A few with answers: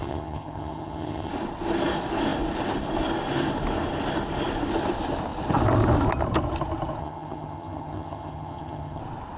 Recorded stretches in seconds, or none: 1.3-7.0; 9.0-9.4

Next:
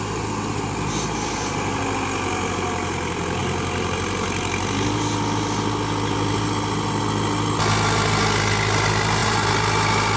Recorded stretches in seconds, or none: 0.0-10.2